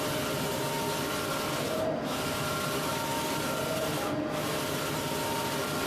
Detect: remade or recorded recorded